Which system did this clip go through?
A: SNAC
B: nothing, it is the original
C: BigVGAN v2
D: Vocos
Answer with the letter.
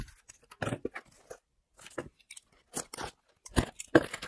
B